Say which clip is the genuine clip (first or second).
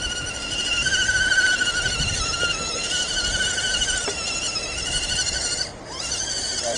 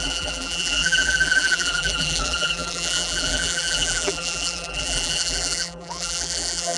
first